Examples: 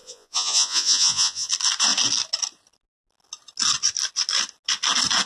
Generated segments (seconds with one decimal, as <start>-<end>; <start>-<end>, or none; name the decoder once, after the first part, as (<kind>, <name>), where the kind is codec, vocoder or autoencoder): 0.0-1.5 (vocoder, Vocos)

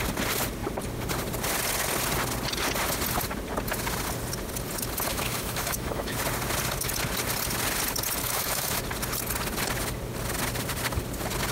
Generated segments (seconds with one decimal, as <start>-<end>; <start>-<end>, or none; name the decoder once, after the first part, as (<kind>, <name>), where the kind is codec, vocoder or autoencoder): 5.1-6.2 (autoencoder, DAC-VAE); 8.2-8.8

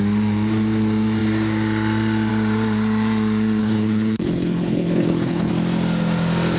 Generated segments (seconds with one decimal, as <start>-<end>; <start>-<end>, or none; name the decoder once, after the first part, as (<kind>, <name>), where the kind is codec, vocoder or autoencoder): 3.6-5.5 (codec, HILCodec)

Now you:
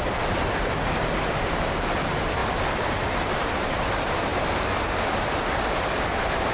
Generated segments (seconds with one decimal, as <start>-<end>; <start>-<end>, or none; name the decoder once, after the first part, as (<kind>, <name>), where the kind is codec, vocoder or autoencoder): 0.0-4.3 (vocoder, BigVGAN v2); 5.2-6.5

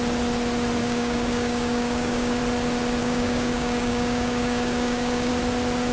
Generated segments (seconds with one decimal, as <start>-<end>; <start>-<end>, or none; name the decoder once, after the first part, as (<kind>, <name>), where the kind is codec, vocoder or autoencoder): 0.8-2.4 (codec, DAC); 3.0-5.3

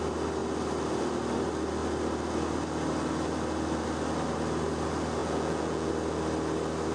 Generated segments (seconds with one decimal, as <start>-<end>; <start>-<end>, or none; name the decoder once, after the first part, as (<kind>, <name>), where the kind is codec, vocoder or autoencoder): 5.2-5.9 (vocoder, Vocos)